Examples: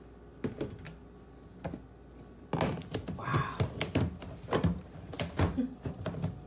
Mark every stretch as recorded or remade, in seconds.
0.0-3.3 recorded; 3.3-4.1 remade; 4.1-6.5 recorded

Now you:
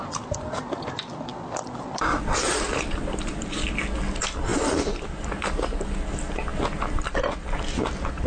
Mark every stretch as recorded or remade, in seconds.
0.0-1.3 recorded; 1.3-3.5 remade; 3.5-4.5 recorded; 4.5-5.4 remade; 5.4-6.5 recorded; 6.5-7.4 remade; 7.4-8.3 recorded

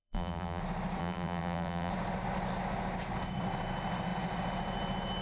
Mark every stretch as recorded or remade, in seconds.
0.0-0.6 remade; 0.6-1.0 recorded; 1.0-1.9 remade; 1.9-5.2 recorded

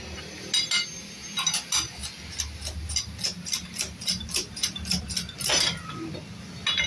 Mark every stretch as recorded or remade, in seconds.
0.0-6.9 recorded

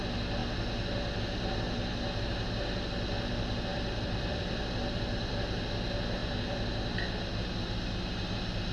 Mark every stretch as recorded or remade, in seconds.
0.0-3.7 recorded; 3.7-5.6 remade; 5.6-8.7 recorded